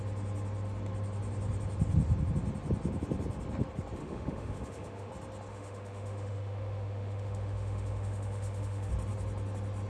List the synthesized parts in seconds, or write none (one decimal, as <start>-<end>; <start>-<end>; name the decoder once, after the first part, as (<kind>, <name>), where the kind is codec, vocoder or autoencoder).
4.0-5.1 (autoencoder, DAC-VAE); 5.5-8.9